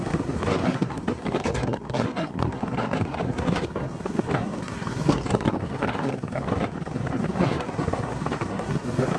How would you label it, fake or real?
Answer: fake